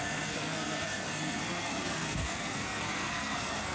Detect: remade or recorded remade